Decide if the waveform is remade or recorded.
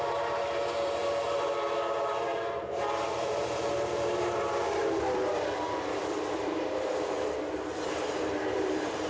remade